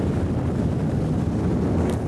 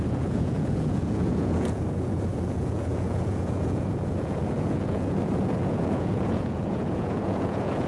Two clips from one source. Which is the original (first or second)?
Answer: first